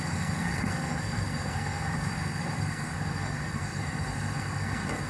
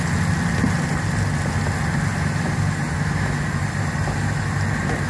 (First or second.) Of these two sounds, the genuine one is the second